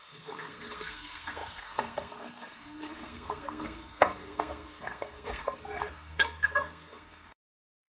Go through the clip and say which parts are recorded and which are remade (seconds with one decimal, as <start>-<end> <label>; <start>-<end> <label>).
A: 0.0-7.9 remade